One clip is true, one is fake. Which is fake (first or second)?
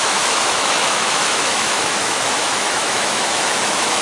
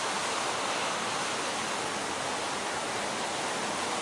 first